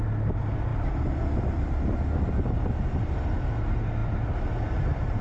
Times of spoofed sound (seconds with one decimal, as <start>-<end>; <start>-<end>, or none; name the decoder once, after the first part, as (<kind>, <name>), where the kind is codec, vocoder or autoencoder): none